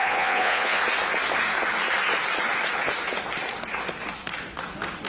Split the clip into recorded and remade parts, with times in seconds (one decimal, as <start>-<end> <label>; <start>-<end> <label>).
0.0-0.8 remade; 0.8-5.1 recorded